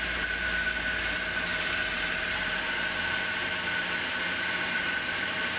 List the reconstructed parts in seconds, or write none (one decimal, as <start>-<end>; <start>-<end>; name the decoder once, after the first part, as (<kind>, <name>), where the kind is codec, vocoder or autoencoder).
0.0-5.6 (vocoder, BigVGAN v2)